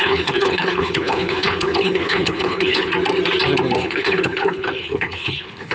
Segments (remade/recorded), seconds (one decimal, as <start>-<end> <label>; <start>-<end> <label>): 0.0-2.9 remade; 2.9-3.8 recorded; 3.8-5.7 remade